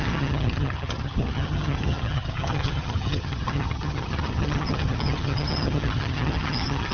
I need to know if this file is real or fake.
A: fake